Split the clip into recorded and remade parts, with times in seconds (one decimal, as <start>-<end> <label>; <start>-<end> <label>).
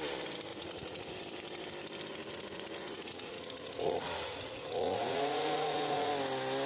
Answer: 0.0-0.5 recorded; 0.5-1.1 remade; 1.1-2.1 recorded; 2.1-6.1 remade; 6.1-6.7 recorded